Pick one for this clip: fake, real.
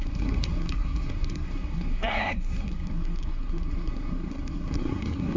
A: fake